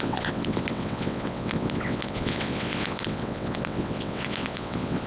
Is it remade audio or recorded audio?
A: remade